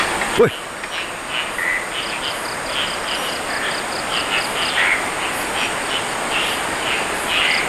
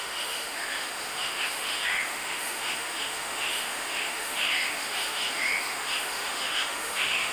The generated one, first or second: second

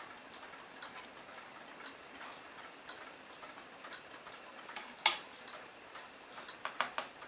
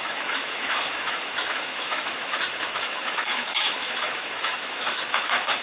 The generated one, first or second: second